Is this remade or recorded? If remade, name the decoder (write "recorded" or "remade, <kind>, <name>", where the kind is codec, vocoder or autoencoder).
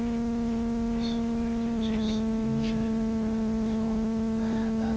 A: recorded